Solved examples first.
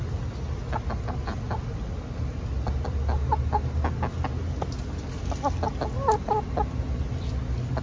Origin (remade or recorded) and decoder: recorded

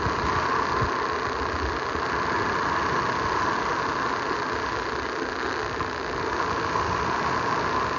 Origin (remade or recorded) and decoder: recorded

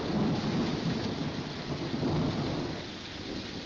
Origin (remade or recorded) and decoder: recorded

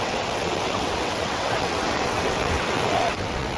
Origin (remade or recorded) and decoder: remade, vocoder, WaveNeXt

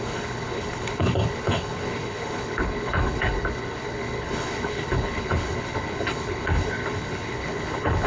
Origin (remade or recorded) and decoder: remade, codec, HILCodec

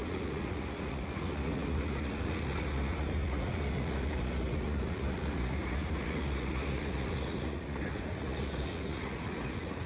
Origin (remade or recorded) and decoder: remade, vocoder, Vocos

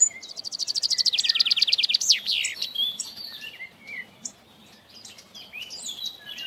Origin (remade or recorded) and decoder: remade, vocoder, BigVGAN v2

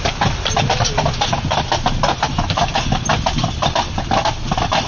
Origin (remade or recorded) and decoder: recorded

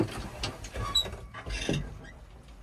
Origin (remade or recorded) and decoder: recorded